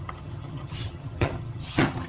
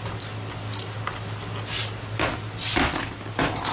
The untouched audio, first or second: second